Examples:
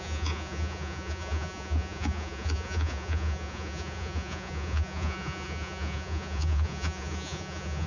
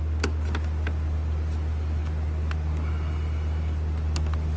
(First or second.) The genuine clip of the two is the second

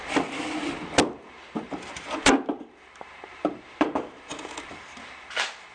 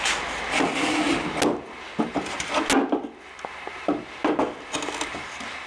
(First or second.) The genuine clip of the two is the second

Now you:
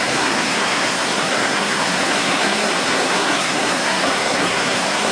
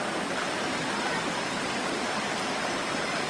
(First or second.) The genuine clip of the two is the second